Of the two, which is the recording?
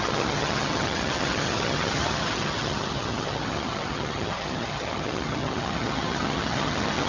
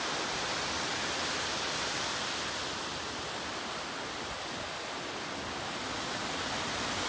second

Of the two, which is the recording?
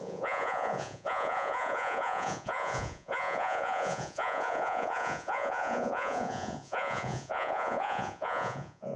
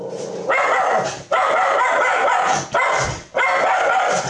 second